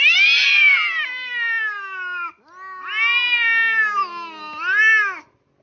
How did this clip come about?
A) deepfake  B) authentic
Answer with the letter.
B